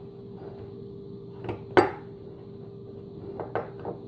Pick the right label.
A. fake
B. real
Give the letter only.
B